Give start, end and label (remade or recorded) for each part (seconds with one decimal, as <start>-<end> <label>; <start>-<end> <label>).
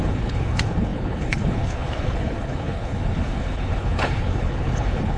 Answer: 0.0-5.2 remade